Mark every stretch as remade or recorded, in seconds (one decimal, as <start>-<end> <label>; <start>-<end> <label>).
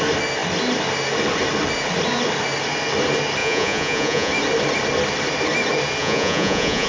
0.0-3.4 recorded; 3.4-4.3 remade; 4.3-6.0 recorded; 6.0-6.9 remade